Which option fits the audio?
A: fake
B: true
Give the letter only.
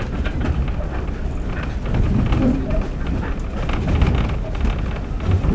B